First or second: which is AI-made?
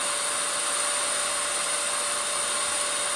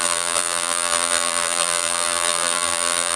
second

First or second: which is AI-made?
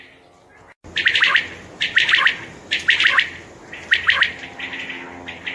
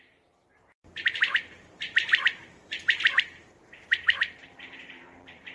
second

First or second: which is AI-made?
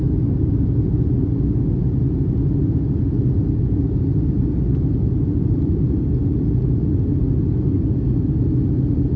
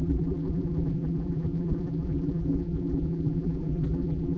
second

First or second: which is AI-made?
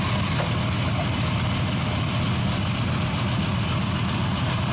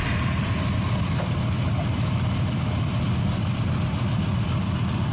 second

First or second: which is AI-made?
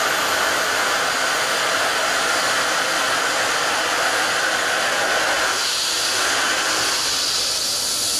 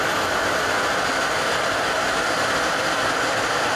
second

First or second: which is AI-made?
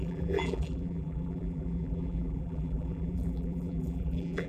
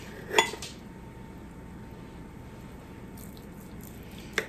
first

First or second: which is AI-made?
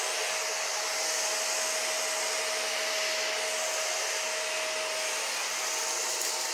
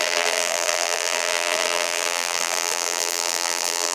second